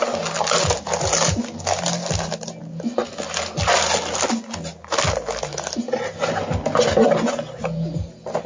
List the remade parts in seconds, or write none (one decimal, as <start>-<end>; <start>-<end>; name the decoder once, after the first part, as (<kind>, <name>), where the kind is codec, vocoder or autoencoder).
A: none